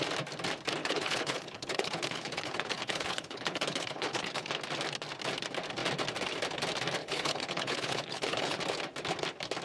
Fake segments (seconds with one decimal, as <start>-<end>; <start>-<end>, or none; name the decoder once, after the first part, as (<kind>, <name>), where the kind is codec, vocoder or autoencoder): 0.8-4.5 (codec, HILCodec); 7.0-8.6

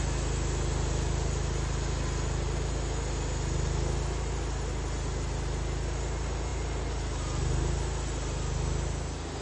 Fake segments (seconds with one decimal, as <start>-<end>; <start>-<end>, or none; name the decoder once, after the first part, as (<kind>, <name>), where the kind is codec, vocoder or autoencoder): none

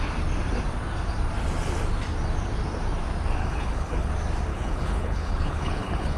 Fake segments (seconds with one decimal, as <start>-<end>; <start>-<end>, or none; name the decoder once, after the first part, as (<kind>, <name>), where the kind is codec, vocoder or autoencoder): 3.4-4.1 (codec, HILCodec); 4.5-6.2

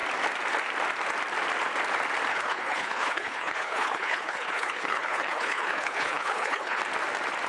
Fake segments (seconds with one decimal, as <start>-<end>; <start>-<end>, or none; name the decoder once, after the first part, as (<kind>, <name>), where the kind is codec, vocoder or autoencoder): 2.3-6.8 (codec, HILCodec)